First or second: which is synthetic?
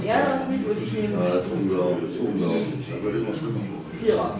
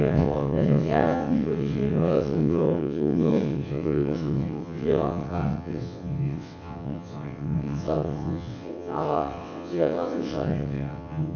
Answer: second